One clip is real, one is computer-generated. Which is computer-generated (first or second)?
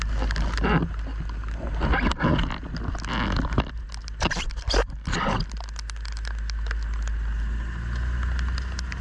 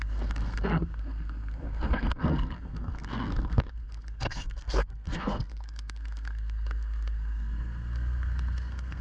second